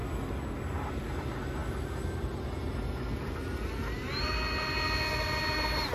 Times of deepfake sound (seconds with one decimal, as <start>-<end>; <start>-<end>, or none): none